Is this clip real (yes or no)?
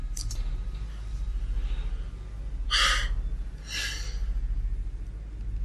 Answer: yes